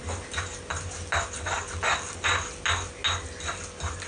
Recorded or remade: recorded